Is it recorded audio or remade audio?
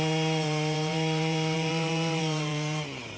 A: remade